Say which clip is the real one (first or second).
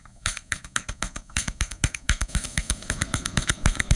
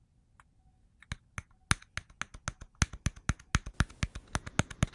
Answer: second